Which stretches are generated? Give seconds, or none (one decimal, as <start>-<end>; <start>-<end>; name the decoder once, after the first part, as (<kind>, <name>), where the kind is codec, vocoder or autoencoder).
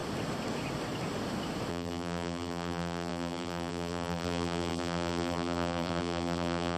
1.7-6.8 (vocoder, BigVGAN v2)